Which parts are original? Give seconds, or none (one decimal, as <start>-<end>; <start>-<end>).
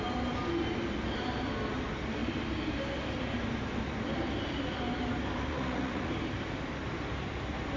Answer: 0.0-5.5; 6.1-7.8